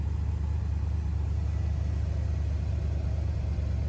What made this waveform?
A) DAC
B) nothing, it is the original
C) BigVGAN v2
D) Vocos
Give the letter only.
B